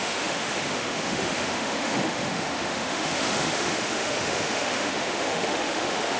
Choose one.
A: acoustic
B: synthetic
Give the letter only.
B